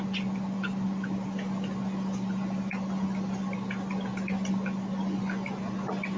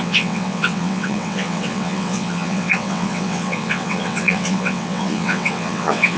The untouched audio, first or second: first